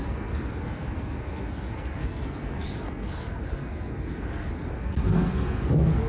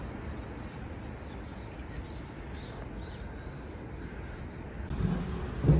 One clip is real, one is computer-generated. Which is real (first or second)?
second